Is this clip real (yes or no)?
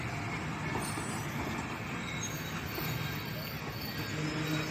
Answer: yes